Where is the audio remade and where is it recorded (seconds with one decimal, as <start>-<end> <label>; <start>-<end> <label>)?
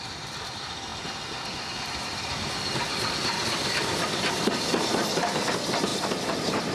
0.0-6.7 recorded